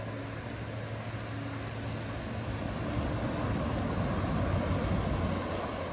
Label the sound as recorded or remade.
recorded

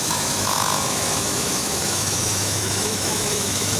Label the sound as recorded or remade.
remade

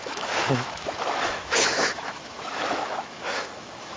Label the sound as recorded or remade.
remade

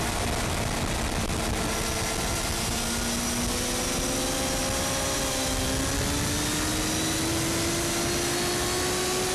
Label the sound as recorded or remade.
recorded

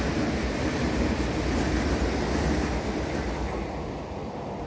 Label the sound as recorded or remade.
recorded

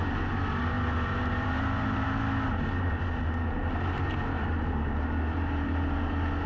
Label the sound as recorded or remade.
recorded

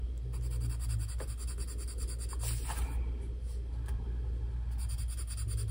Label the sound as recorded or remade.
recorded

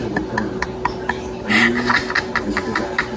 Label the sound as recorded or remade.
recorded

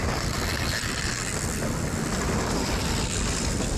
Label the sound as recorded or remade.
recorded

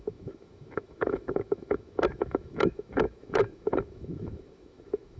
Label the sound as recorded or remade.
remade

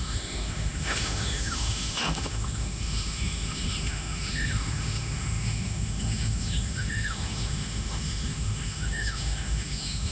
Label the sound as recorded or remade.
remade